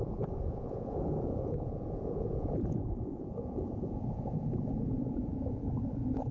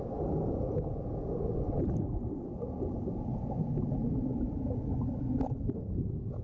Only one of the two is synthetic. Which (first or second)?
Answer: first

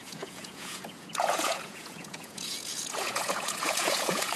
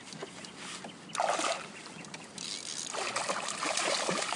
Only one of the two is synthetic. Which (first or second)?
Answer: first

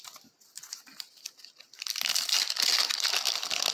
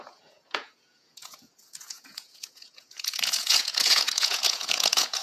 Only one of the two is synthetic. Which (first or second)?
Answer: second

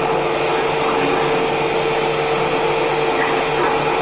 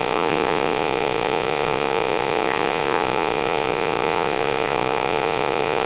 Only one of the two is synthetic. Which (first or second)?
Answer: second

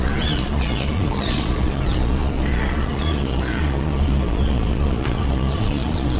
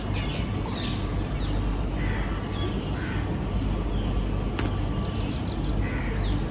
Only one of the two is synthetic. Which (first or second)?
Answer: first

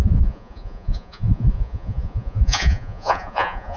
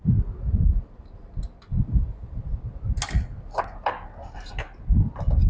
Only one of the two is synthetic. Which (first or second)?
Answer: first